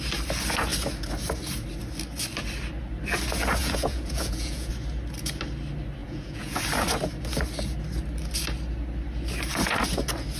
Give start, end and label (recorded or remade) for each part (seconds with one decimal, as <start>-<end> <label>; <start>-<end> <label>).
0.0-3.6 recorded; 3.6-4.7 remade; 4.7-6.0 recorded; 6.0-6.6 remade; 6.6-10.4 recorded